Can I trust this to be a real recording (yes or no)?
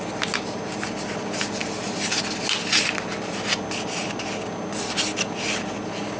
yes